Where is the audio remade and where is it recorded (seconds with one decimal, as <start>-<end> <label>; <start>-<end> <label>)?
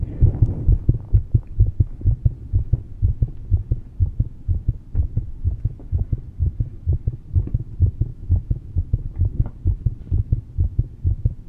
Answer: 0.0-8.1 recorded; 8.1-8.8 remade; 8.8-11.5 recorded